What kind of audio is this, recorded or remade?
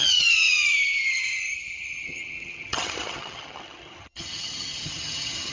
remade